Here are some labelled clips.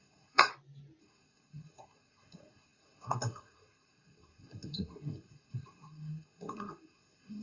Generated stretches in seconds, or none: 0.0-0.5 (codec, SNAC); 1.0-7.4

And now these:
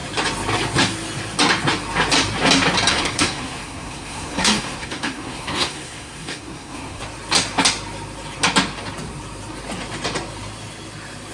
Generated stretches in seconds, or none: 2.9-7.0 (codec, SNAC)

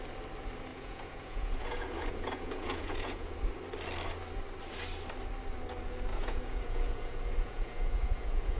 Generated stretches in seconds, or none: 0.7-3.4 (vocoder, Vocos); 6.1-8.6